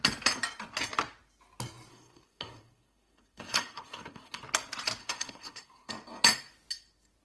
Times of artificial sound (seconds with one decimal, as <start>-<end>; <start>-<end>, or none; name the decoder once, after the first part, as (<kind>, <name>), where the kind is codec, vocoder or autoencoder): 1.9-4.4 (codec, SNAC); 5.0-5.9